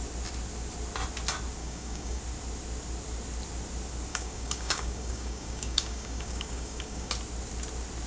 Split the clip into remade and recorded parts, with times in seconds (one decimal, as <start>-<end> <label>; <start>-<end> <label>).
0.0-1.6 recorded; 1.6-2.2 remade; 2.2-4.1 recorded; 4.1-7.1 remade; 7.1-8.1 recorded